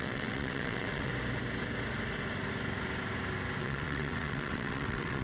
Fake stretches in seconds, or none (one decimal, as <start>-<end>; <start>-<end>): 0.0-1.1; 3.6-5.2